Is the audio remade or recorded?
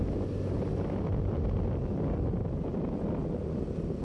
recorded